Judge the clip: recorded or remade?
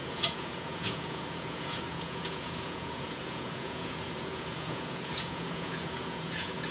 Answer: remade